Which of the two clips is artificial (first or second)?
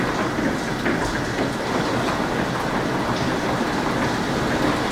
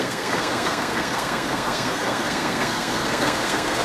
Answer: second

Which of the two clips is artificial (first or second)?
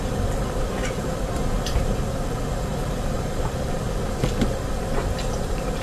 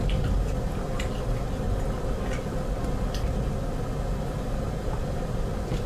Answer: first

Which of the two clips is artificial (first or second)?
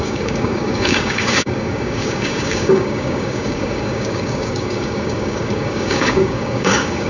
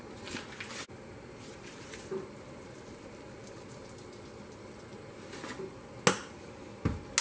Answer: first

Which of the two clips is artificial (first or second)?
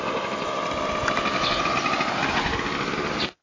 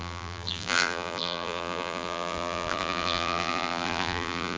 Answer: second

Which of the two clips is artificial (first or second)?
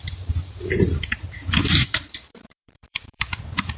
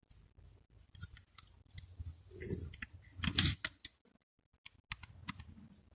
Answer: first